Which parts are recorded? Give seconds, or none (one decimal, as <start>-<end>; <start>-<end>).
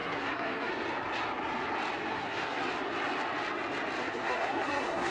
0.7-2.1; 2.7-4.0